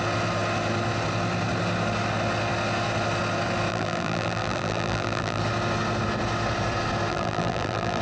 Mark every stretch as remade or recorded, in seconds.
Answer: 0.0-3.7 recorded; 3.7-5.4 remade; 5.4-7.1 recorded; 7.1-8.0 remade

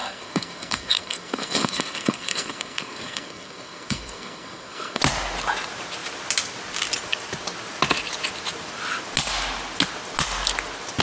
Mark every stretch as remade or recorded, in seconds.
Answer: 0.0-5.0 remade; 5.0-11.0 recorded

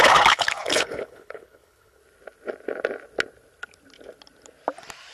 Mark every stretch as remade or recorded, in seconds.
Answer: 0.0-2.0 remade; 2.0-5.1 recorded

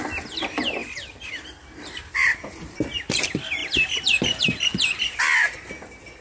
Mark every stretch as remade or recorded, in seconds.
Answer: 0.0-0.8 recorded; 0.8-2.7 remade; 2.7-3.6 recorded; 3.6-5.2 remade; 5.2-6.2 recorded